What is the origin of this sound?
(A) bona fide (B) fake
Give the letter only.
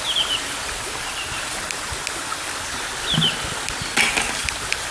A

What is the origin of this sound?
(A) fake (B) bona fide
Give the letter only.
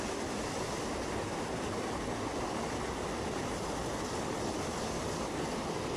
B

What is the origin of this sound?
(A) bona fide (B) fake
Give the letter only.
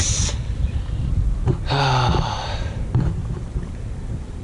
A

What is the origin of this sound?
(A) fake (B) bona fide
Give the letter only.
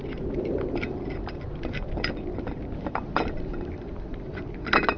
B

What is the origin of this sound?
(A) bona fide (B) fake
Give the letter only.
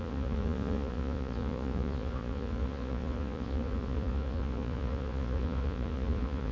B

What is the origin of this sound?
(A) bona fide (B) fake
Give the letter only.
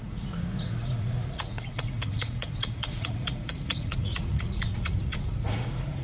B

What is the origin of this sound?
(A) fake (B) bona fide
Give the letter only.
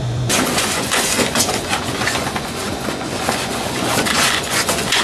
A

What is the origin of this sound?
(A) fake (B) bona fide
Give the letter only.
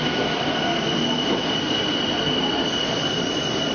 B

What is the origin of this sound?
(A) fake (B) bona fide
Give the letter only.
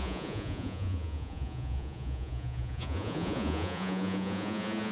A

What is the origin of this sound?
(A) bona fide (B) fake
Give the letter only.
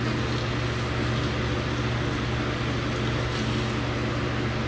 A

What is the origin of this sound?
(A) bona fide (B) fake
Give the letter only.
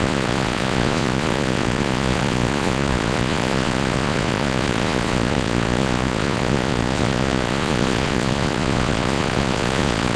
B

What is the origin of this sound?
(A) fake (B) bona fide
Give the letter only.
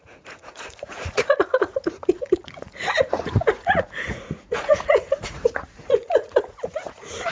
A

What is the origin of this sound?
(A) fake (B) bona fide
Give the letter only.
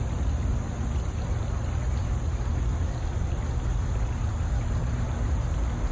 B